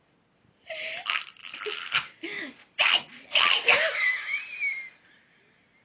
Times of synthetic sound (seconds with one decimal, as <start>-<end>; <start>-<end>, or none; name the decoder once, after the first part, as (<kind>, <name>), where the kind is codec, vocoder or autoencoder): 1.4-1.9 (vocoder, BigVGAN v2); 3.3-4.1